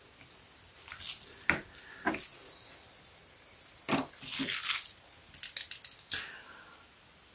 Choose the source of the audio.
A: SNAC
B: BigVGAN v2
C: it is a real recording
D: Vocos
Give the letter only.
C